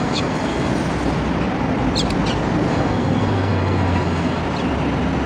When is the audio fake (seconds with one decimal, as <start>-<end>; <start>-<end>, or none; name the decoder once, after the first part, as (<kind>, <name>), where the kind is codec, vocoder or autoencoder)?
0.0-0.7 (codec, SNAC); 2.7-4.4